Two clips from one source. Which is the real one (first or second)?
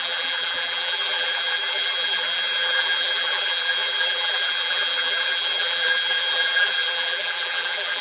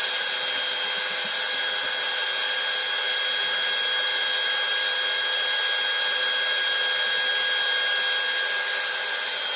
second